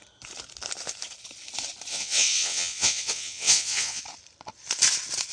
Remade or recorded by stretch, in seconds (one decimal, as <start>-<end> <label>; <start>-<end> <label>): 0.0-1.9 recorded; 1.9-4.0 remade; 4.0-5.3 recorded